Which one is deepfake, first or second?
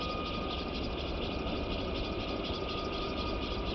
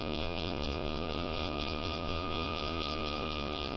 second